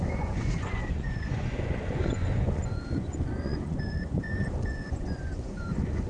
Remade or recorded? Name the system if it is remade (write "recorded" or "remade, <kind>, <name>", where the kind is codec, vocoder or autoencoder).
remade, vocoder, Vocos